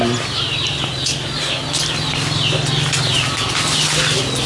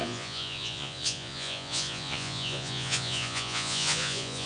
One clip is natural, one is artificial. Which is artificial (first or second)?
second